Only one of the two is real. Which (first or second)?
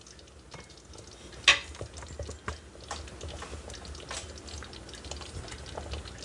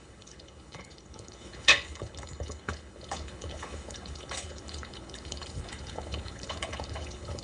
first